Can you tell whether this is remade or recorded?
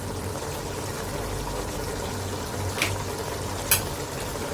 recorded